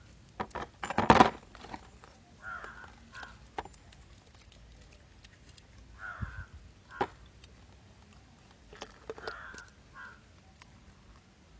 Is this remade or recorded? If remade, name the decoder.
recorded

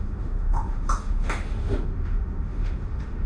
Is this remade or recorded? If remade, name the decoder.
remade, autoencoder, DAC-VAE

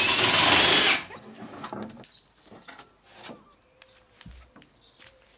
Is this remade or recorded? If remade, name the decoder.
recorded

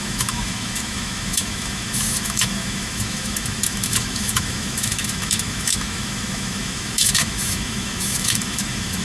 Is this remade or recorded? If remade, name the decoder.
remade, autoencoder, DAC-VAE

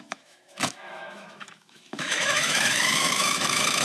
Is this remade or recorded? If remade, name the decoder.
remade, autoencoder, DAC-VAE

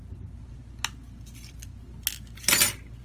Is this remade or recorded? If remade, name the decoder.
recorded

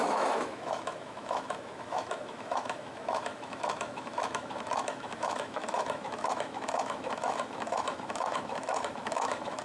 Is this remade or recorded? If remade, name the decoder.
remade, autoencoder, DAC-VAE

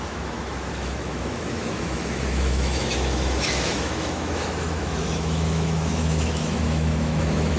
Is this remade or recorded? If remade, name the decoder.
remade, autoencoder, DAC-VAE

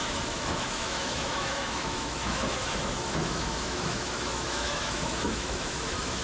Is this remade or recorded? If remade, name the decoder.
remade, autoencoder, DAC-VAE